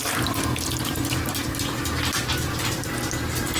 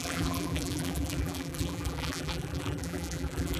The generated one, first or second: second